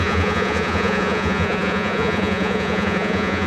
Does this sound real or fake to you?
fake